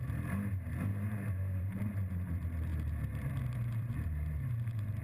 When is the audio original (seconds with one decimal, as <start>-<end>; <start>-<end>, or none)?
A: 0.0-0.9; 1.9-2.7